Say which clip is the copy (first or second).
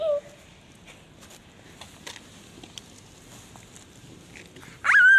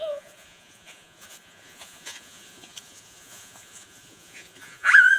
second